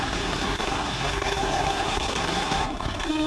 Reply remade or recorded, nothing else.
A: remade